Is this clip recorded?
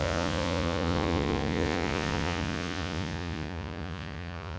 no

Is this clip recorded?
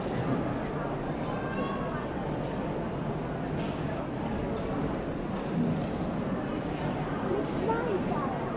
yes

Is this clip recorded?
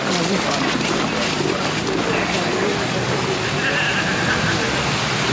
yes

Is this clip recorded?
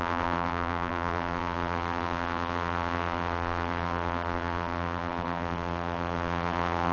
no